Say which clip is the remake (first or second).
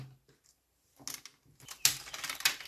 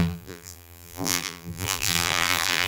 second